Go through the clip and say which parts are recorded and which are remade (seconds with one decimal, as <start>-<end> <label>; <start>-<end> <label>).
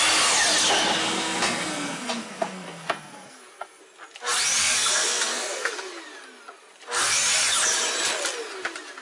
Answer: 0.0-1.0 recorded; 1.0-3.8 remade; 3.8-4.6 recorded; 4.6-5.7 remade; 5.7-9.0 recorded